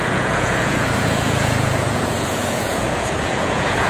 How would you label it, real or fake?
fake